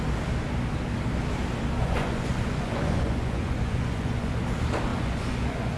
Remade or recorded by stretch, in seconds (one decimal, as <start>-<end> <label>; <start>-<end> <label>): 0.0-1.8 recorded; 1.8-4.4 remade; 4.4-4.9 recorded; 4.9-5.8 remade